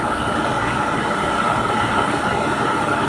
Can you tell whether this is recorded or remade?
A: remade